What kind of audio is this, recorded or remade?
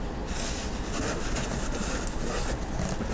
recorded